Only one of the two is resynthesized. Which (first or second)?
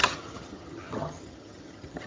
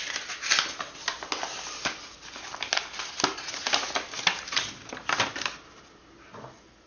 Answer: first